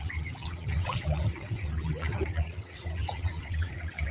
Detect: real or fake fake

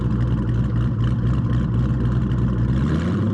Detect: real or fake fake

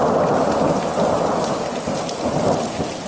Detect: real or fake real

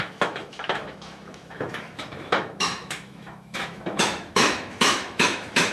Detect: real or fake fake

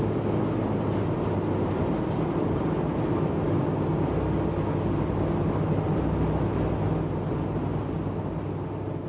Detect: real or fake real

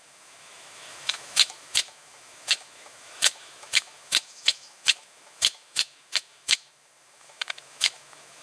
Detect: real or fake fake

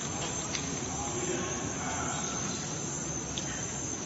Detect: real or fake real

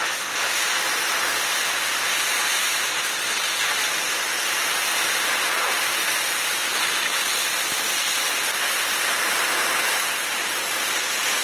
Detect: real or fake real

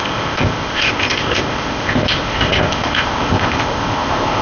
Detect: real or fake fake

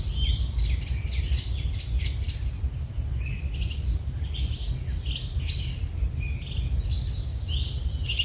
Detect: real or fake real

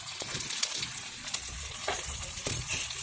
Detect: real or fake fake